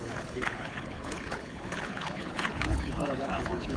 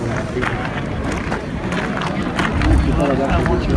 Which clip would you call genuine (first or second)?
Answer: second